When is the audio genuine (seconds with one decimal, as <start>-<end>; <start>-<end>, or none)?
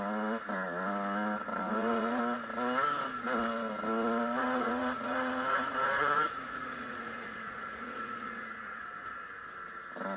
0.0-1.5; 2.2-4.4; 8.8-10.2